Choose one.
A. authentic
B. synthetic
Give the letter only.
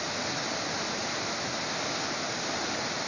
A